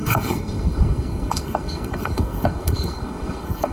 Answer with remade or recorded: remade